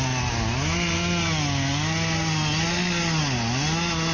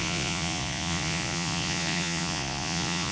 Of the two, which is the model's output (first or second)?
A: second